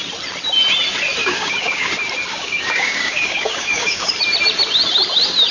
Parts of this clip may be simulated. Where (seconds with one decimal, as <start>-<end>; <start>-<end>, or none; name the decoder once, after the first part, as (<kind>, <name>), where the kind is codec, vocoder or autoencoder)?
1.2-1.9 (codec, DAC); 2.3-4.1